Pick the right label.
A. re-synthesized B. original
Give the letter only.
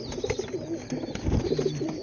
B